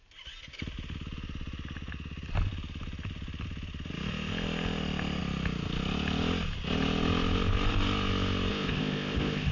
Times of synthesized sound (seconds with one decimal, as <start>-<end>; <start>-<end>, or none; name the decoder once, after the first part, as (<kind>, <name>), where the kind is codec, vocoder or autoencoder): 8.5-9.5 (codec, ZipCodec)

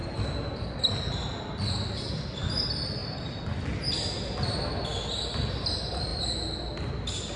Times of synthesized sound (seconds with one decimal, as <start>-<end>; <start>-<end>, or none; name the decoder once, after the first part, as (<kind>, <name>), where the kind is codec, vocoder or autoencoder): none

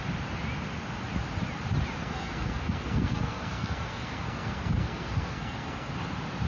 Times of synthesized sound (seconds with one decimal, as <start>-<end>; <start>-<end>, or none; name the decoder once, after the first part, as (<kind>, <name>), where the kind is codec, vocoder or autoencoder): 2.0-5.9 (codec, SNAC)

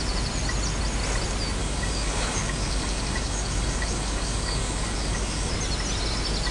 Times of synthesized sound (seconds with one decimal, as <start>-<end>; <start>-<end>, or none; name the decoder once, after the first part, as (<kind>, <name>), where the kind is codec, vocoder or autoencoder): 1.6-5.5 (codec, DAC)